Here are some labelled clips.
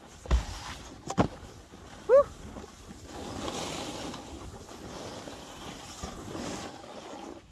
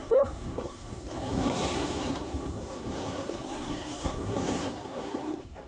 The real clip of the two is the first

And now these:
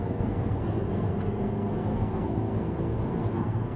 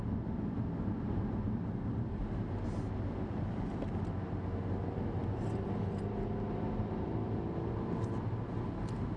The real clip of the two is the second